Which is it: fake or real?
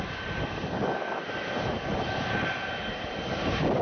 real